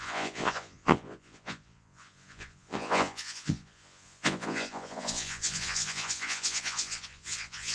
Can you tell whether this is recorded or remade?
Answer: remade